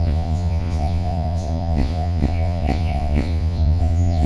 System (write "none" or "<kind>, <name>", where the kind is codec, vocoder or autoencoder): vocoder, Vocos